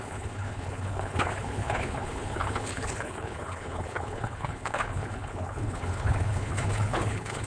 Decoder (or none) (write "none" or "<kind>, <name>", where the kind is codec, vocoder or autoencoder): codec, HILCodec